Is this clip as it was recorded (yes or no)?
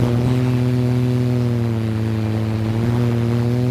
yes